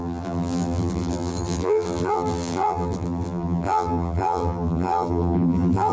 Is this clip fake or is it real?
fake